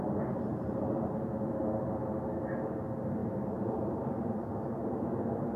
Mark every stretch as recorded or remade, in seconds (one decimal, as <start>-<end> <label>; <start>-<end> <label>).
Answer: 0.0-0.5 recorded; 0.5-1.3 remade; 1.3-3.2 recorded; 3.2-4.5 remade; 4.5-5.6 recorded